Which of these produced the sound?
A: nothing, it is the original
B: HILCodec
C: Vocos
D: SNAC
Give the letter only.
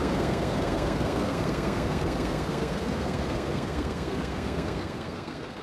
D